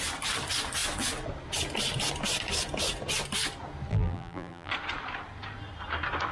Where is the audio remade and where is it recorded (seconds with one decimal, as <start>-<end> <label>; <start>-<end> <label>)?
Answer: 0.0-3.9 recorded; 3.9-4.7 remade; 4.7-6.3 recorded